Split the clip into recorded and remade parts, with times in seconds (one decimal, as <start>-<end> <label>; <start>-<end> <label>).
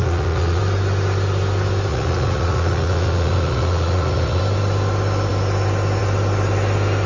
0.0-0.6 remade; 0.6-1.9 recorded; 1.9-4.4 remade; 4.4-7.1 recorded